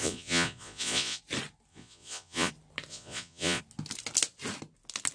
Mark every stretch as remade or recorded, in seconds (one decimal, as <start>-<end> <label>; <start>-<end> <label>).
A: 0.0-1.2 remade; 1.2-1.7 recorded; 1.7-2.5 remade; 2.5-2.9 recorded; 2.9-3.6 remade; 3.6-5.1 recorded

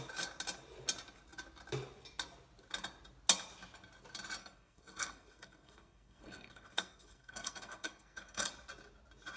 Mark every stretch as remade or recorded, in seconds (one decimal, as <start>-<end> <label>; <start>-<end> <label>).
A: 0.0-4.4 recorded; 4.4-8.5 remade; 8.5-9.4 recorded

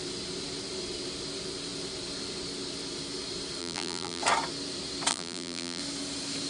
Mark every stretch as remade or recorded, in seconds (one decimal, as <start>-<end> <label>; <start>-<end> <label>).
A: 0.0-3.6 recorded; 3.6-4.2 remade; 4.2-5.1 recorded; 5.1-5.8 remade; 5.8-6.5 recorded